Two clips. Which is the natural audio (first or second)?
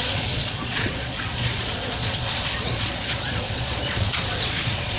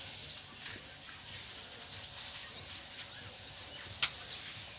second